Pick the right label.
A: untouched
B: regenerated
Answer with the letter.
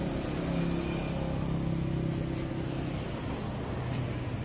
A